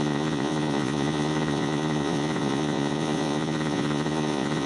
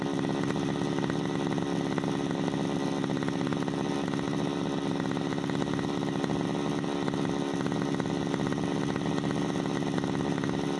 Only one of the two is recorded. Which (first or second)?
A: second